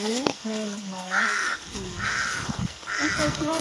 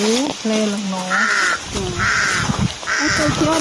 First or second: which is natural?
second